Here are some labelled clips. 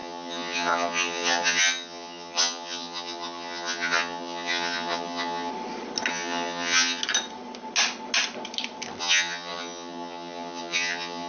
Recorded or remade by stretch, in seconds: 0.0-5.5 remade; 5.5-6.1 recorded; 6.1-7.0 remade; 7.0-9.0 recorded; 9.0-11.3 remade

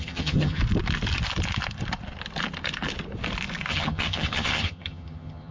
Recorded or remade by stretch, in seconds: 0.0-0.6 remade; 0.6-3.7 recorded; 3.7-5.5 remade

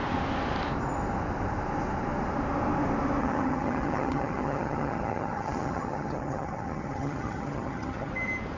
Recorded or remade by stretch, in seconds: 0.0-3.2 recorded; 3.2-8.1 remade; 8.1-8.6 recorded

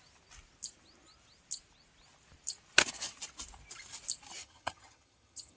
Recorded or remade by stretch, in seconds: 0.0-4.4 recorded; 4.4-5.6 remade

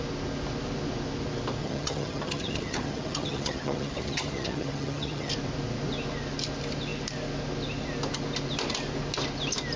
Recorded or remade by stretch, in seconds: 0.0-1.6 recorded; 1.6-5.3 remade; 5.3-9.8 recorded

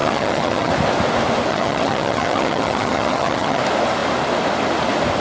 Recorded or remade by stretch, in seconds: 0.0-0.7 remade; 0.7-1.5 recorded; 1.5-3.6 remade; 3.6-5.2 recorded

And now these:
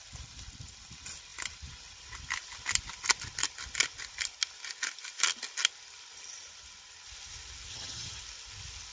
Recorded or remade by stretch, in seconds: 0.0-7.7 recorded; 7.7-8.2 remade; 8.2-8.9 recorded

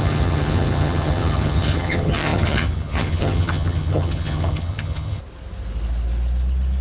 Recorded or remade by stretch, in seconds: 0.0-5.2 remade; 5.2-6.8 recorded